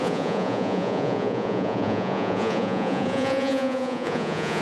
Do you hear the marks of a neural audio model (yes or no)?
yes